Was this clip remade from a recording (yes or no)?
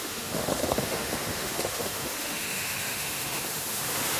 yes